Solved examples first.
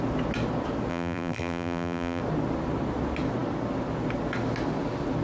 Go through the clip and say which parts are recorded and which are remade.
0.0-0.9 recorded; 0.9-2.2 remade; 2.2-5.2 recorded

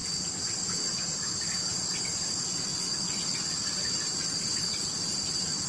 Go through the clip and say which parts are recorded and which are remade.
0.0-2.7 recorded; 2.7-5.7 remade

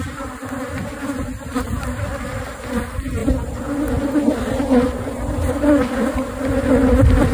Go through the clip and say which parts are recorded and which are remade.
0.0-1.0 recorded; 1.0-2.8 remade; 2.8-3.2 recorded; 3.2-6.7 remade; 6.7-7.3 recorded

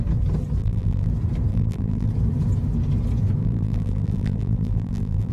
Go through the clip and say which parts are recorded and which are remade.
0.0-0.6 recorded; 0.6-1.1 remade; 1.1-1.5 recorded; 1.5-2.1 remade; 2.1-3.4 recorded; 3.4-5.3 remade

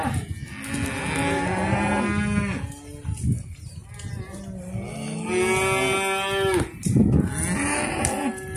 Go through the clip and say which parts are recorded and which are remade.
0.0-8.6 recorded